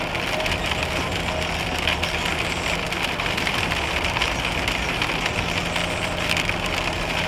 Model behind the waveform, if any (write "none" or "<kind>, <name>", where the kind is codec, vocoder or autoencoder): none